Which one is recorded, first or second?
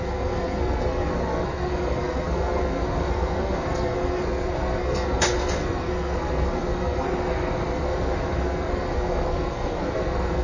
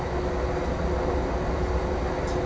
second